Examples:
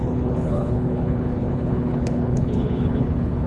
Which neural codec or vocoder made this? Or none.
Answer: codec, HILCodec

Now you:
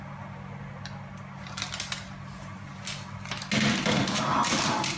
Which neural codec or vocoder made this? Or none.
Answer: none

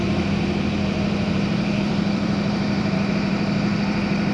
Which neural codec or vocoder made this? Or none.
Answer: vocoder, BigVGAN v2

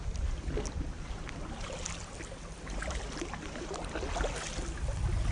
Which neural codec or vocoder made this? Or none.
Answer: none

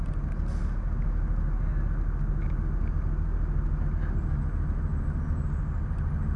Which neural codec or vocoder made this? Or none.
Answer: none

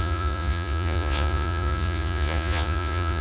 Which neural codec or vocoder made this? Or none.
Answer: vocoder, Vocos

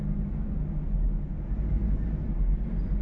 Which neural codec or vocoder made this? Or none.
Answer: none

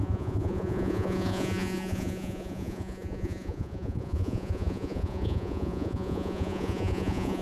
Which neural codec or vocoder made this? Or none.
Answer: vocoder, Vocos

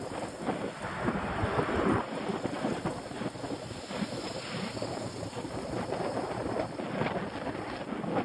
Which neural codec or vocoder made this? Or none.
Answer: none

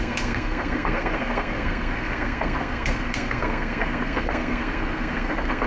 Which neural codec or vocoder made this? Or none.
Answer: codec, SNAC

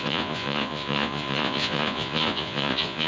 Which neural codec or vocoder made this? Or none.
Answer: vocoder, Vocos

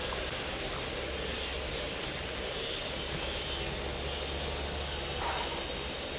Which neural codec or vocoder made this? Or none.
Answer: none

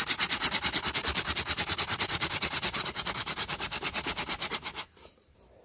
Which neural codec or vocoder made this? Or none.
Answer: vocoder, BigVGAN v2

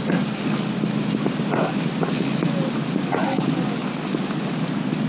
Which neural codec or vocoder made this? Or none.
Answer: none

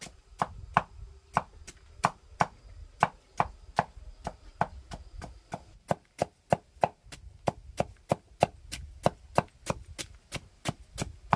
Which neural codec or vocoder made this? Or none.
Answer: none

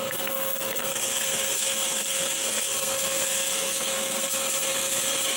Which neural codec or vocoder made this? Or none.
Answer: codec, SNAC